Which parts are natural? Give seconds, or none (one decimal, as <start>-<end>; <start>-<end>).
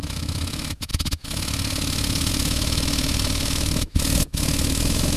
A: none